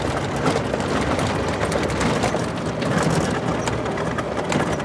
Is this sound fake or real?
real